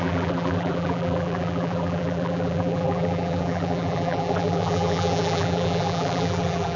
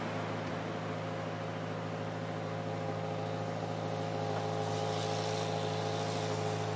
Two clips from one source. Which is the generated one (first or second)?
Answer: first